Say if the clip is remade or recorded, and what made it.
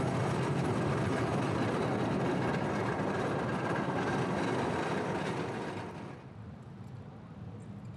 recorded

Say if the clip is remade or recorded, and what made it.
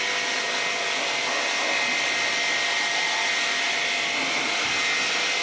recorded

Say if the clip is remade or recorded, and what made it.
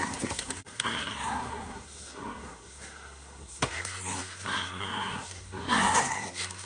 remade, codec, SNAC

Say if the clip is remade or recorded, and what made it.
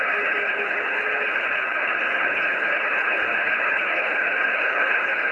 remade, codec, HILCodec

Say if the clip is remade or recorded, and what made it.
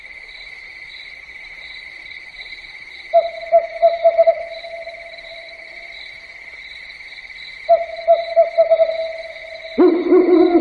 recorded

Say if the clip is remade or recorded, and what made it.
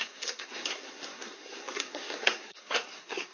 remade, codec, SNAC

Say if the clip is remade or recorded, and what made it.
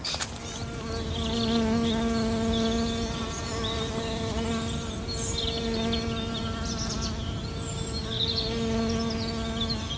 recorded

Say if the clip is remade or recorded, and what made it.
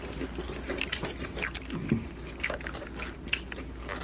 recorded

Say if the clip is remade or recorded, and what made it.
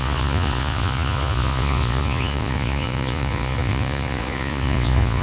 remade, vocoder, Vocos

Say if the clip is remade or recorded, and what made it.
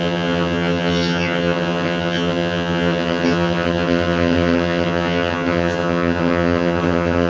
remade, vocoder, HiFi-GAN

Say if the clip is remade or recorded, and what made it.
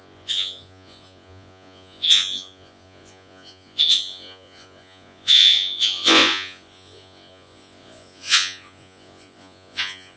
remade, vocoder, Vocos